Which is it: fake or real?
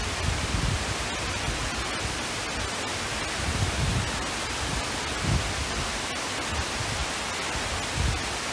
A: real